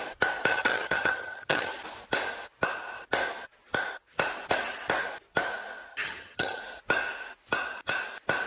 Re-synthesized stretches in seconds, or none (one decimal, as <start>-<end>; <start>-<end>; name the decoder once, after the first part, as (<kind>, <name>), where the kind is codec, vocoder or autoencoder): 0.5-1.7 (vocoder, HiFi-GAN); 5.9-6.6